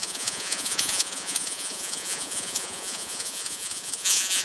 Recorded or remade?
remade